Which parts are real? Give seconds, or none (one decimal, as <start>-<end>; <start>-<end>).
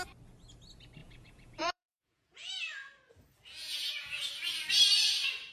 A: 0.0-1.0; 2.5-3.6; 4.2-5.5